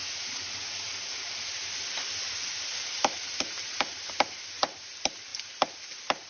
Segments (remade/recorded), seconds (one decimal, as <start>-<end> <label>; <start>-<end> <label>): 0.0-6.3 recorded